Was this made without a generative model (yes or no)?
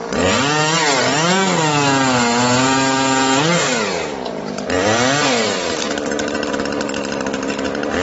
yes